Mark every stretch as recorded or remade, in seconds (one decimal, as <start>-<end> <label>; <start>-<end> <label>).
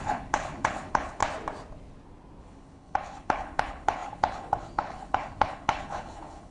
0.0-1.2 remade; 1.2-2.4 recorded; 2.4-6.5 remade